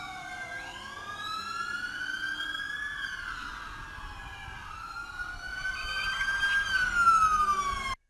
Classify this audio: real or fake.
real